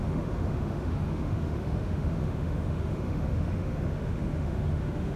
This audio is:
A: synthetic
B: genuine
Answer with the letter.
A